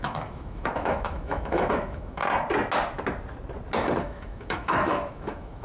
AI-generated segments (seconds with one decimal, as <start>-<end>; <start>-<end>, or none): 0.0-2.2; 4.0-5.6